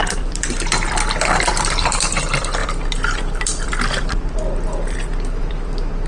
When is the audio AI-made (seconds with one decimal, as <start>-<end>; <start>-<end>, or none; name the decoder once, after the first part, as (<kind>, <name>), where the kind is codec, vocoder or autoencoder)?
0.0-6.1 (vocoder, BigVGAN v2)